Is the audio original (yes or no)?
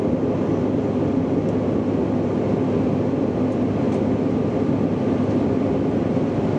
yes